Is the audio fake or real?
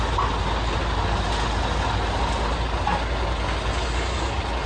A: real